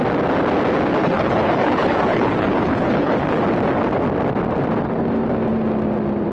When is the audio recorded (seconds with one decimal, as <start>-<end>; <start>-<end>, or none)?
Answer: 0.0-1.0; 3.4-6.3